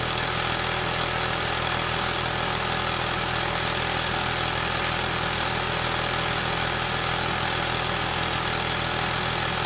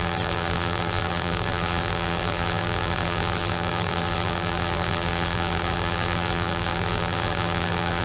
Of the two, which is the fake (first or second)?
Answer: second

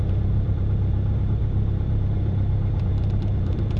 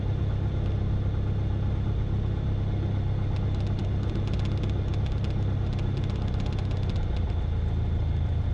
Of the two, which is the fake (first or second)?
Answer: first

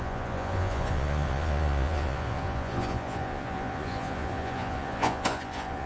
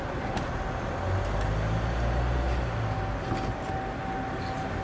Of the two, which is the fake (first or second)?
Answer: first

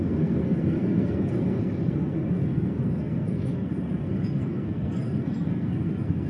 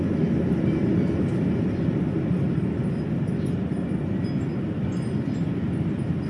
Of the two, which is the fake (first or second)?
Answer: first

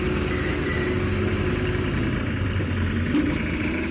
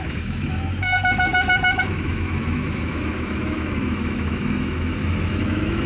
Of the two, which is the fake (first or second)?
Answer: second